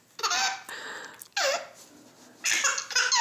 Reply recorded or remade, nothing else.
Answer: recorded